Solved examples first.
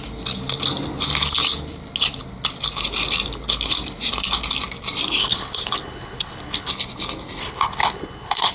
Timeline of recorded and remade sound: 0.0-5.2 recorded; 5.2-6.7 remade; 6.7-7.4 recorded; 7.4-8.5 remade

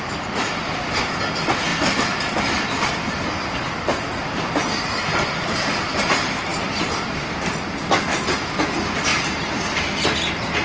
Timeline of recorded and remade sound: 0.0-1.7 recorded; 1.7-4.1 remade; 4.1-9.1 recorded; 9.1-9.8 remade; 9.8-10.6 recorded

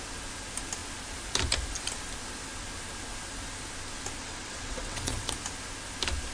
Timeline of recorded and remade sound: 0.0-4.2 recorded; 4.2-5.3 remade; 5.3-6.3 recorded

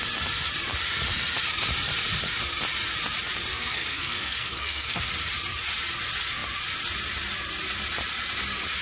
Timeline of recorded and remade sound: 0.0-3.5 recorded; 3.5-5.1 remade; 5.1-8.8 recorded